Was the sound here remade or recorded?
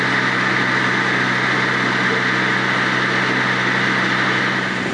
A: recorded